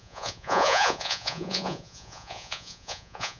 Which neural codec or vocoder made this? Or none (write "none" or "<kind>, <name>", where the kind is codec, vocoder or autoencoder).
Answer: vocoder, Vocos